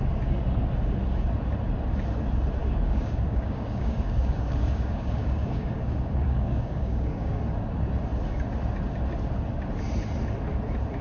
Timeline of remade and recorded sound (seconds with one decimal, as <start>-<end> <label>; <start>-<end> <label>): 0.0-2.6 recorded; 2.6-7.4 remade; 7.4-11.0 recorded